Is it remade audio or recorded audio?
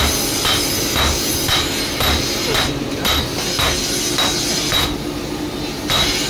recorded